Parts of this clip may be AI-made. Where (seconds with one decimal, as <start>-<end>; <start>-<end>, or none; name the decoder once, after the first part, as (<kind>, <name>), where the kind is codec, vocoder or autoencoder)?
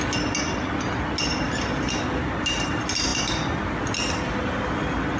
none